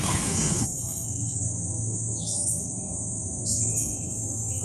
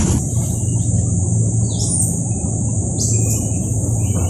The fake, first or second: first